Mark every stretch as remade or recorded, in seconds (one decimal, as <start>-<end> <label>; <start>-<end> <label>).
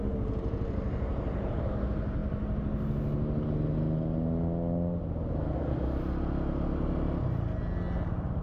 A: 0.0-8.4 recorded